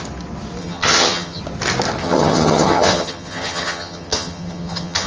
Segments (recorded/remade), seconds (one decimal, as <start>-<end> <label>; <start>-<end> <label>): 0.0-0.6 recorded; 0.6-1.4 remade; 1.4-2.0 recorded; 2.0-5.1 remade